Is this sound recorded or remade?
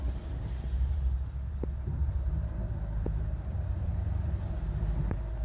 remade